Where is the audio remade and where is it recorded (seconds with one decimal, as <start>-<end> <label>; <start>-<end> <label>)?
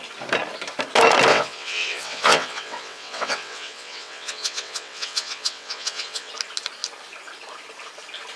0.0-1.3 recorded; 1.3-6.3 remade; 6.3-8.4 recorded